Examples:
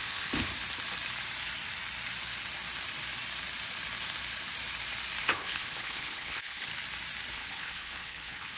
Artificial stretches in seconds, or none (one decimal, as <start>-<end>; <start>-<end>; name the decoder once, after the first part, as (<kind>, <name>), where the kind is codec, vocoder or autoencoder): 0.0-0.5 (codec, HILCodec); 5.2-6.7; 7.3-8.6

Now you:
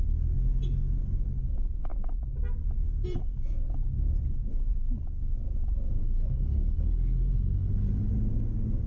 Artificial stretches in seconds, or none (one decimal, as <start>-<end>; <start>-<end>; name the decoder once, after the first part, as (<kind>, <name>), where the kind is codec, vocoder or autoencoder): 6.0-8.1 (codec, HILCodec)

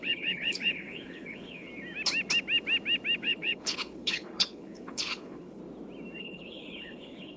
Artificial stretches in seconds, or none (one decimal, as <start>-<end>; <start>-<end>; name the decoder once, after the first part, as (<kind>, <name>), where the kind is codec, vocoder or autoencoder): 0.0-1.7 (codec, HILCodec); 3.2-5.6; 6.2-7.4

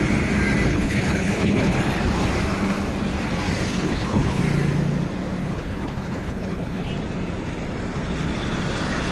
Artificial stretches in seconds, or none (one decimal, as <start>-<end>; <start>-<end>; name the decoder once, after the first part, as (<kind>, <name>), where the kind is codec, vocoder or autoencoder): 0.7-1.8 (codec, HILCodec); 3.7-4.4; 5.4-6.9